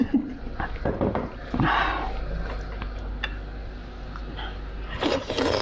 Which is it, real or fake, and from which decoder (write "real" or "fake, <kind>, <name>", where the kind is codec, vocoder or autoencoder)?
real